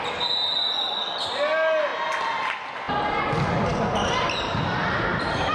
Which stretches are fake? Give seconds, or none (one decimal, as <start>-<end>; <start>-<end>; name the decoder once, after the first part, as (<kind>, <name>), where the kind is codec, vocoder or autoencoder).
none